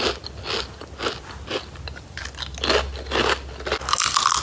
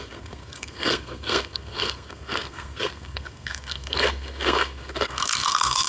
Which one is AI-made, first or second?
second